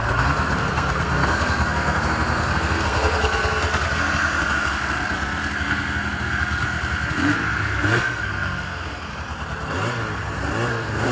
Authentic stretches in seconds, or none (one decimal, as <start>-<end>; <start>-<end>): 9.1-10.7